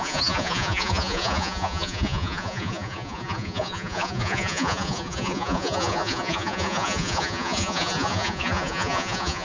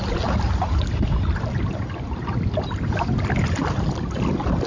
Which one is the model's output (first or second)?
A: first